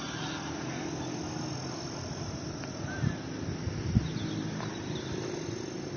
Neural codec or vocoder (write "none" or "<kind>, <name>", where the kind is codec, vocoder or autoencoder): none